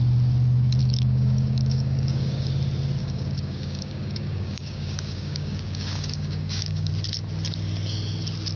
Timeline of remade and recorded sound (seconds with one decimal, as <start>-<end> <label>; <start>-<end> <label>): 0.0-0.8 recorded; 0.8-2.5 remade; 2.5-3.0 recorded; 3.0-6.9 remade; 6.9-8.6 recorded